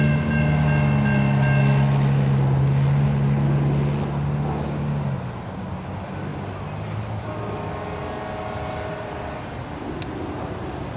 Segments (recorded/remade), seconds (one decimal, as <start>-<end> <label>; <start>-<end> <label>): 0.0-11.0 recorded